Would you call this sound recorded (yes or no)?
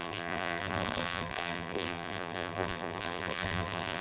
no